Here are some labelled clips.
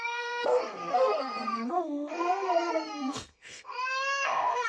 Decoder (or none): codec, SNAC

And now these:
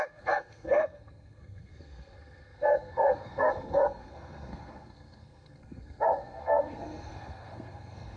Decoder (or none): codec, SNAC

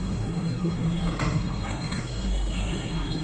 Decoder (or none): codec, SNAC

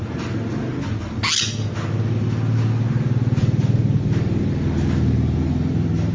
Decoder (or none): none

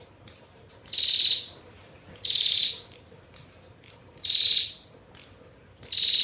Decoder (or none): none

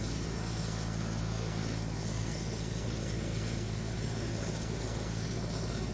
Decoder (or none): codec, SNAC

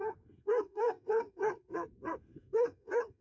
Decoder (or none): codec, SNAC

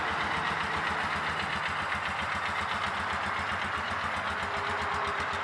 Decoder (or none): none